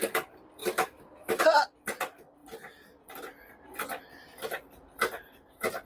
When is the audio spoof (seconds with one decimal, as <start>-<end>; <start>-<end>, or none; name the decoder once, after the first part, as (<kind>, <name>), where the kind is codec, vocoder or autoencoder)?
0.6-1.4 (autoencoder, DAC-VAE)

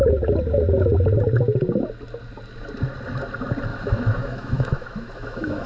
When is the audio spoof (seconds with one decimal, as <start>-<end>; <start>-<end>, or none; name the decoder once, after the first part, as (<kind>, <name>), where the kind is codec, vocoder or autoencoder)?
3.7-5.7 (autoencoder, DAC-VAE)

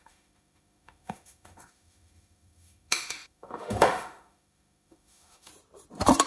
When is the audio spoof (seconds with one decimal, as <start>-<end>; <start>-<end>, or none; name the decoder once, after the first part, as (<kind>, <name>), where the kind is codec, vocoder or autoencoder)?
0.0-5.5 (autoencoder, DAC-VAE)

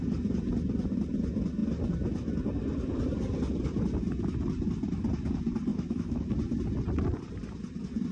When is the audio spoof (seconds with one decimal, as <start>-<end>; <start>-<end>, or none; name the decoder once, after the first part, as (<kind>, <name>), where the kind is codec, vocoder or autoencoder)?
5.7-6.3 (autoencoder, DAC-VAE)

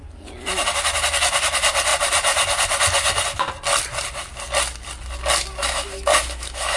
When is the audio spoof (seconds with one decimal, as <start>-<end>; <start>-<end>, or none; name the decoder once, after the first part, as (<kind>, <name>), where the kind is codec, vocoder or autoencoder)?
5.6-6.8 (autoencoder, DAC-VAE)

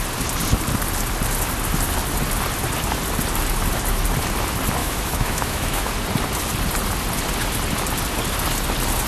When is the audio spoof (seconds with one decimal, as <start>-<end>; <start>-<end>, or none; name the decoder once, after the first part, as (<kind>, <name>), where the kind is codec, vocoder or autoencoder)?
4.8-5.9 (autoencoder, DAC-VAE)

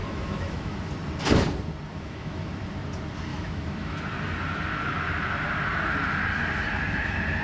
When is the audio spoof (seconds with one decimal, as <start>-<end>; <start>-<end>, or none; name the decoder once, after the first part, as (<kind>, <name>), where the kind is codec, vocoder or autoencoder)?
0.0-0.9 (autoencoder, DAC-VAE); 1.9-2.5; 3.3-4.0

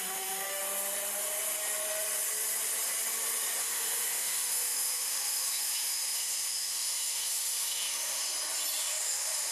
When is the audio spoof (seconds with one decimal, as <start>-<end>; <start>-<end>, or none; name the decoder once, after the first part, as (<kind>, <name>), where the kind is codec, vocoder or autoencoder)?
0.0-0.6 (autoencoder, DAC-VAE); 3.6-8.2; 8.8-9.5